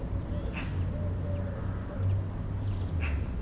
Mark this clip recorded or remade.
recorded